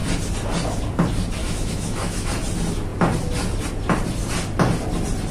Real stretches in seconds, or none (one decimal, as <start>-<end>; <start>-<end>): 0.0-1.4; 2.3-5.3